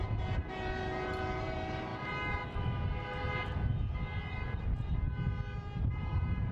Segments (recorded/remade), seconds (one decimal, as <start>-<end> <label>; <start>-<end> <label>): 0.0-1.9 remade; 1.9-5.8 recorded; 5.8-6.5 remade